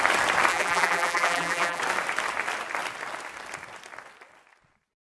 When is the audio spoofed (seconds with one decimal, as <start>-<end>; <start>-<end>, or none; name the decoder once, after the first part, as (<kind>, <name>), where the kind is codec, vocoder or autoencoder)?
0.5-1.8 (vocoder, BigVGAN v2)